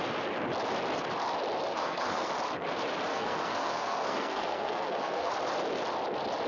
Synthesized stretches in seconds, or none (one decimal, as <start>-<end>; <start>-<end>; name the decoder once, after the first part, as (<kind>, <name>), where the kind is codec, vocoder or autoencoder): 1.7-2.3 (codec, SNAC); 3.1-5.3